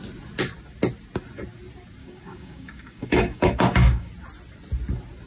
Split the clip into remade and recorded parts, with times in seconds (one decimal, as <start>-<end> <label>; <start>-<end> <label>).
0.0-2.0 recorded; 2.0-4.1 remade; 4.1-5.3 recorded